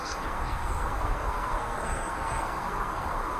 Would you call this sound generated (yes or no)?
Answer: yes